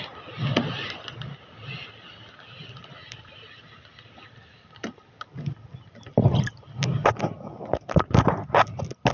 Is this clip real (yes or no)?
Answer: yes